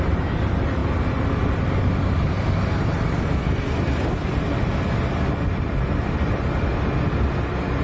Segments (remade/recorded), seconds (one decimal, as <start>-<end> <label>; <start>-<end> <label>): 0.0-7.8 recorded